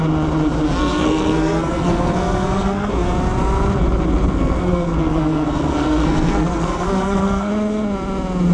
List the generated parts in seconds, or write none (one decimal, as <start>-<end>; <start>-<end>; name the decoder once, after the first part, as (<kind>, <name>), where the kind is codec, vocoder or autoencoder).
0.8-2.9 (codec, SNAC); 4.3-7.5